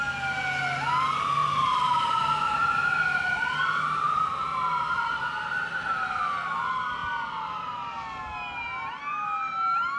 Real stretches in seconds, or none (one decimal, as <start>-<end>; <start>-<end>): 0.0-1.4; 6.2-10.0